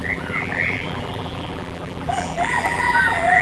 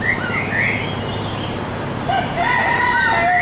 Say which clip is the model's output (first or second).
first